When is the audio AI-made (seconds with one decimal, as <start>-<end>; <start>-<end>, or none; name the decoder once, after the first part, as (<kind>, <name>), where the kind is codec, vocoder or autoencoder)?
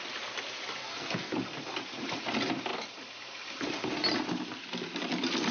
0.8-1.3 (codec, SNAC)